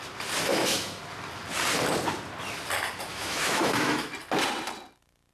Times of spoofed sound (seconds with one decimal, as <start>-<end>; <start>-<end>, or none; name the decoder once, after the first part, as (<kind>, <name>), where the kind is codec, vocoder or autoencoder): 0.5-1.0 (autoencoder, DAC-VAE); 3.1-4.1